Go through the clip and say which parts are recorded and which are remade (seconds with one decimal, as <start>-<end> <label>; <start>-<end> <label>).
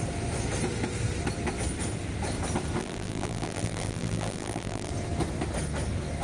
0.0-2.8 recorded; 2.8-4.9 remade; 4.9-6.2 recorded